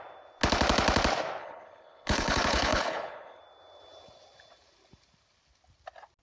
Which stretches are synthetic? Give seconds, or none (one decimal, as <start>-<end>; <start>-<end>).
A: 1.4-3.4